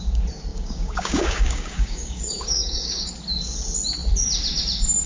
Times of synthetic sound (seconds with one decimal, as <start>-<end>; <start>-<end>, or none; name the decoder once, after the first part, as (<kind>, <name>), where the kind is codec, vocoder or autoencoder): 0.5-3.1 (codec, DAC)